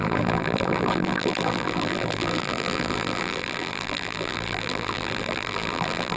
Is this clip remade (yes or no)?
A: yes